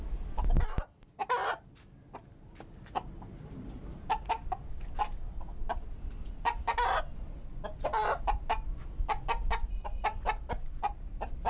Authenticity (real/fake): real